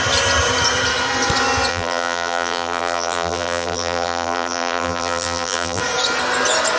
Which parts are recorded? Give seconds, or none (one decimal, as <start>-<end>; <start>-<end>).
0.0-1.7; 5.8-6.8